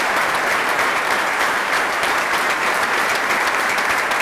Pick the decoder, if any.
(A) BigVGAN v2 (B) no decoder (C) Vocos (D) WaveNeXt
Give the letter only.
A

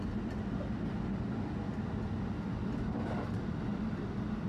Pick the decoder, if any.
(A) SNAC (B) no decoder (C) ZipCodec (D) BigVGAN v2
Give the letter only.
B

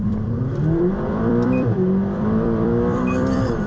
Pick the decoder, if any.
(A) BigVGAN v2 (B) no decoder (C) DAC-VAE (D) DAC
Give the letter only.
A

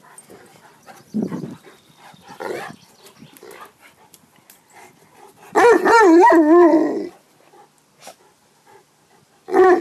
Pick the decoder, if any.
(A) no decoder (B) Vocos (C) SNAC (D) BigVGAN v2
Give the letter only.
A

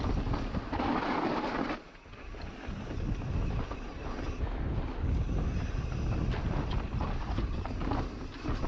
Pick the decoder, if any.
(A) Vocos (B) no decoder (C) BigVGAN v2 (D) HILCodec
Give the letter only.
B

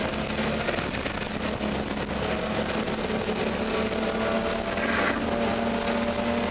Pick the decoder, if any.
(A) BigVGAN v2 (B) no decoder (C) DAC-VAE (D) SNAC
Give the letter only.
B